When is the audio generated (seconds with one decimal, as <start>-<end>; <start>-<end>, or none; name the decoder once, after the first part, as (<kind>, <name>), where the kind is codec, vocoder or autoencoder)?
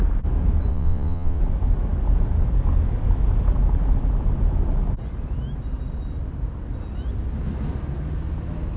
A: 0.7-1.4 (vocoder, WaveNeXt)